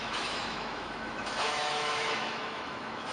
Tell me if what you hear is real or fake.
fake